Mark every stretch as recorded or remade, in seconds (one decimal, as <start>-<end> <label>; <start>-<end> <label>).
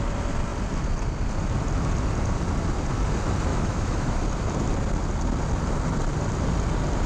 0.0-3.5 recorded; 3.5-4.2 remade; 4.2-7.1 recorded